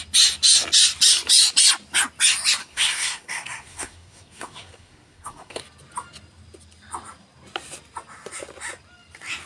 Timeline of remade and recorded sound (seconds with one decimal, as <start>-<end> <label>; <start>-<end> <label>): 0.0-2.6 recorded; 2.6-5.6 remade; 5.6-9.5 recorded